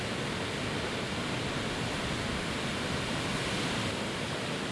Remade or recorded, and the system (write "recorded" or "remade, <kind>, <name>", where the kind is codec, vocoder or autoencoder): recorded